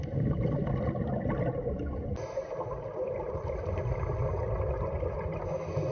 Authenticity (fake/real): real